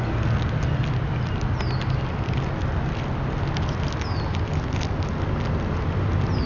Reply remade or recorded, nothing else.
recorded